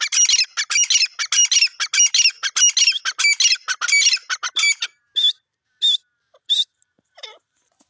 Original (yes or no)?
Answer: yes